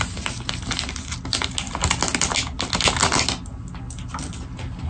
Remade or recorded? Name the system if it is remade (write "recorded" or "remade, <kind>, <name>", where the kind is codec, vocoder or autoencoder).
recorded